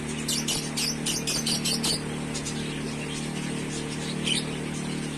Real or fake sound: real